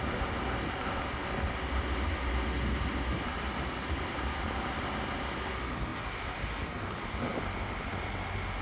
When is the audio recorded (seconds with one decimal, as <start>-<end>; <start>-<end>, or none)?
0.0-8.6